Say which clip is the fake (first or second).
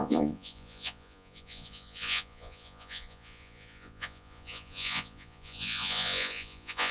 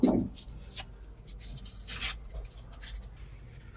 first